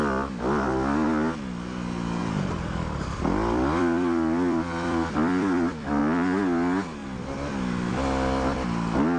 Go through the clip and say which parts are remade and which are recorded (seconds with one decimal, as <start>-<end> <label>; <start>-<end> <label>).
0.0-2.2 recorded; 2.2-6.0 remade; 6.0-9.2 recorded